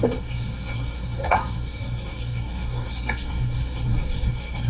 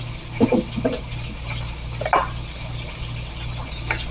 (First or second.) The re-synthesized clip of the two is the first